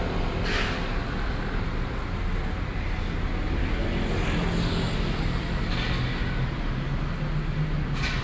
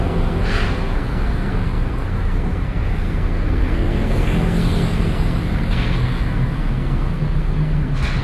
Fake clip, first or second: second